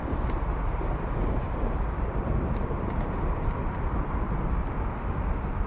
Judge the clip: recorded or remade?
remade